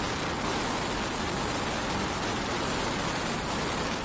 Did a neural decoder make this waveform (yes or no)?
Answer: no